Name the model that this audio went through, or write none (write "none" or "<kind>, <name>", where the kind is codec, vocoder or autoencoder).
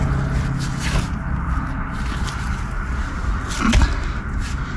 none